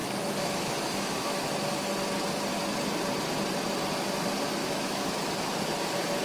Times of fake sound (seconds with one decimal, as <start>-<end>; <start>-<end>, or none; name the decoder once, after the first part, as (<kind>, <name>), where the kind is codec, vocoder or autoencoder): 0.0-1.7 (autoencoder, DAC-VAE); 4.6-5.1